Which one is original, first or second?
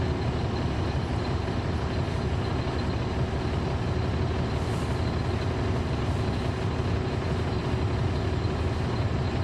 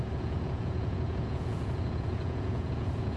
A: first